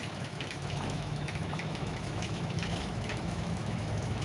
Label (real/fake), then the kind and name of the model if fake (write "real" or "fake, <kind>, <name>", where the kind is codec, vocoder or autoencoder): fake, autoencoder, DAC-VAE